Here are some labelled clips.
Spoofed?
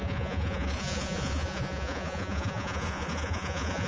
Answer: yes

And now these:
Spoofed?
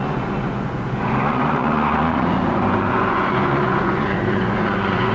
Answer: yes